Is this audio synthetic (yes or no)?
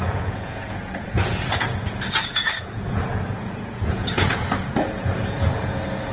yes